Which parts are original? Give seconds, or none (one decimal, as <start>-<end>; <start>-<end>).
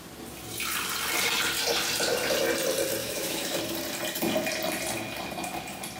0.0-3.0; 3.6-6.0